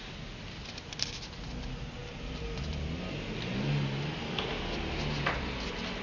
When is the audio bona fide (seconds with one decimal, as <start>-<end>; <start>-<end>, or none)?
0.0-6.0